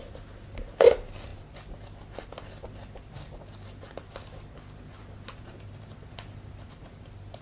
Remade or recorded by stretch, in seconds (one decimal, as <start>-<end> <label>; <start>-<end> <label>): 0.0-7.4 recorded